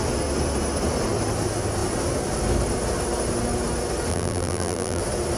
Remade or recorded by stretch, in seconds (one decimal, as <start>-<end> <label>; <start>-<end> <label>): 0.0-4.1 recorded; 4.1-5.0 remade; 5.0-5.4 recorded